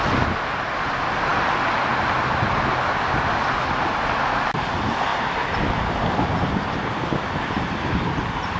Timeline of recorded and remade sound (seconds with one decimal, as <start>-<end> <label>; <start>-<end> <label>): 0.0-8.6 recorded